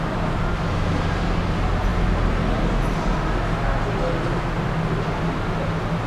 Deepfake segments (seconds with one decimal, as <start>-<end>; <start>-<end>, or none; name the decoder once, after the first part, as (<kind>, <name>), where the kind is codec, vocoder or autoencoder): none